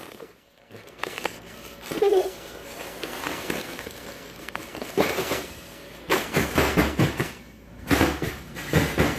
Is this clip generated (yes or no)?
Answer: yes